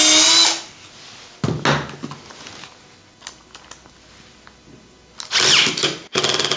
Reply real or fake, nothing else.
real